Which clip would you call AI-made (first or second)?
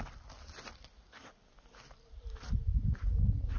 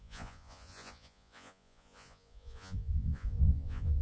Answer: second